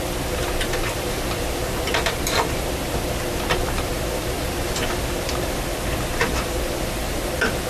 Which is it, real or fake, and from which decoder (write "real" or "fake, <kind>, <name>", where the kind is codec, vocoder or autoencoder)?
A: fake, vocoder, BigVGAN v2